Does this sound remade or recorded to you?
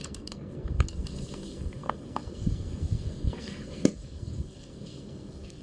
remade